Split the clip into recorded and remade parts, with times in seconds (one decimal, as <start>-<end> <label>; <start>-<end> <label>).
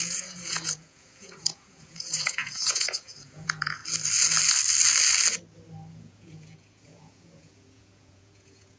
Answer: 0.0-3.8 remade; 3.8-5.9 recorded; 5.9-8.8 remade